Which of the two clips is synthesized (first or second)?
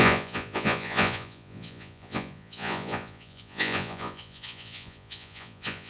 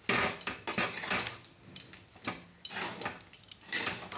first